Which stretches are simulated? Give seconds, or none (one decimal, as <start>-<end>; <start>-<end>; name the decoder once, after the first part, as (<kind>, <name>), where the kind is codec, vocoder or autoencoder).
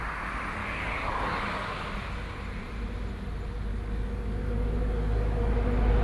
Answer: 0.6-1.4 (codec, DAC); 3.7-5.5